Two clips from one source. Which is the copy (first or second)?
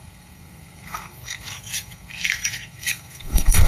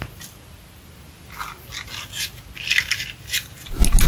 first